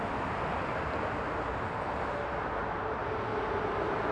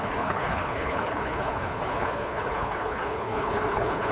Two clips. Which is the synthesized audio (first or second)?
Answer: second